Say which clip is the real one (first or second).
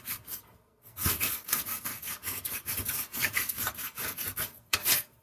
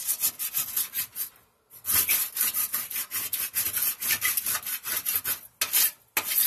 second